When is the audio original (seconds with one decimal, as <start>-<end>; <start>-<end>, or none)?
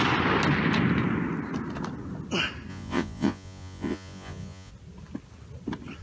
0.0-2.7; 4.7-6.0